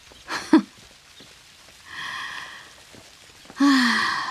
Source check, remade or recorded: recorded